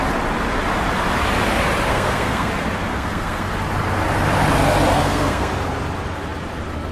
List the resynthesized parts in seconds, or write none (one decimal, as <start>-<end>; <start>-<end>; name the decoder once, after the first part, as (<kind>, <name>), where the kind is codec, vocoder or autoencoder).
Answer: 1.9-2.5 (codec, SNAC); 2.9-3.5; 5.0-5.5